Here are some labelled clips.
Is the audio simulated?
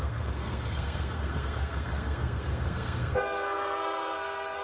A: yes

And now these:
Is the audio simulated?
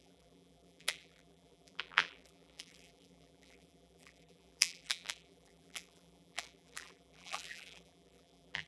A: yes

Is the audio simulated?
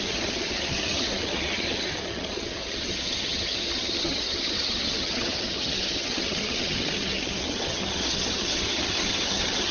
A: yes